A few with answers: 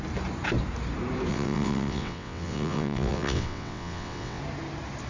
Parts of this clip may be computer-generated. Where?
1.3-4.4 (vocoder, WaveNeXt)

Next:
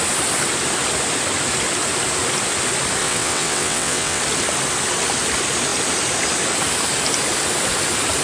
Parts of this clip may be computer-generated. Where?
3.0-4.2 (vocoder, WaveNeXt)

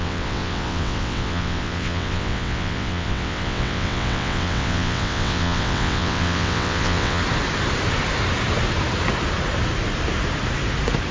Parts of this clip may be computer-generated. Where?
0.0-7.2 (vocoder, WaveNeXt)